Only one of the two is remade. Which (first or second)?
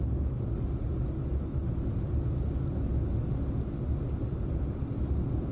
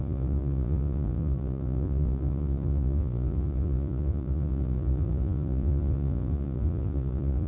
second